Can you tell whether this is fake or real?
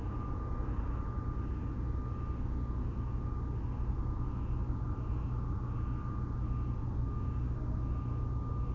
real